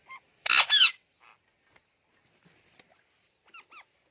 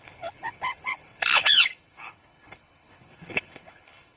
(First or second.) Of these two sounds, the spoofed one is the second